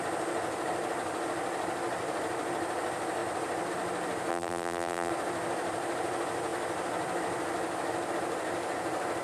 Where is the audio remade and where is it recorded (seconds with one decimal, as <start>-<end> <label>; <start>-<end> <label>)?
0.0-4.3 recorded; 4.3-5.1 remade; 5.1-9.2 recorded